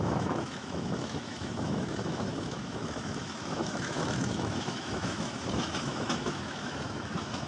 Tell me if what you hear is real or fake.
fake